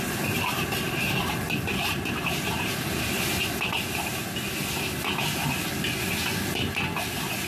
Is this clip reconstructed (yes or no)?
no